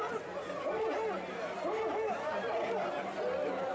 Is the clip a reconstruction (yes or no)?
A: no